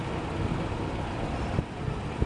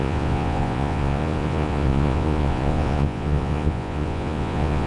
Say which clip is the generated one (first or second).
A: second